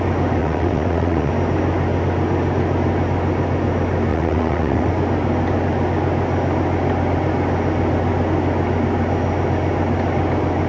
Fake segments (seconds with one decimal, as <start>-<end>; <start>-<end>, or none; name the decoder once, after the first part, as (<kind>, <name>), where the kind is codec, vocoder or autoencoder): 0.4-1.3 (vocoder, WaveNeXt); 4.1-4.9